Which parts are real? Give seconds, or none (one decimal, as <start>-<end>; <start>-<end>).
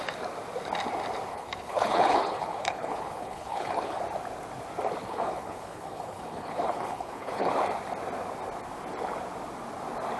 0.0-1.3; 4.0-5.0; 7.5-10.2